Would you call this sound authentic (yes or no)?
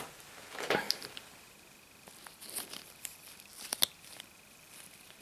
yes